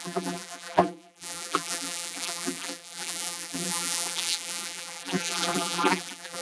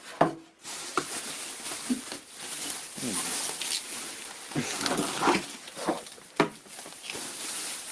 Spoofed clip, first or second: first